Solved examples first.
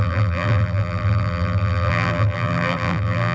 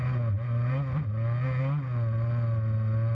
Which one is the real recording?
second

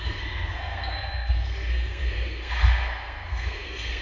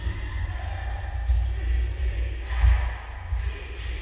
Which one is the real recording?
second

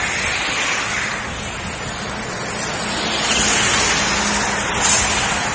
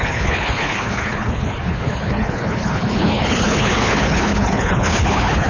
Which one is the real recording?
first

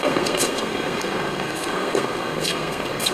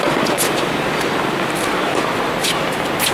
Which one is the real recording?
second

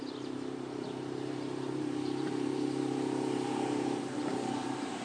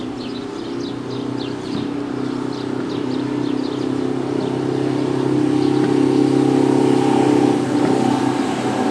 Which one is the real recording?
second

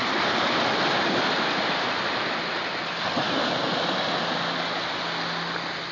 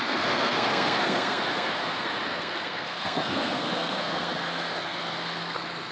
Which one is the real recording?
first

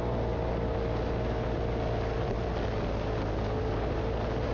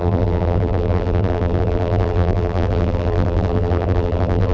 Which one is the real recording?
first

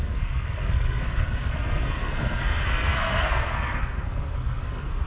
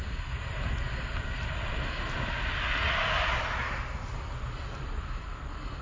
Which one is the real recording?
second